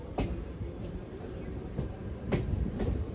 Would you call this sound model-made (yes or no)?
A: yes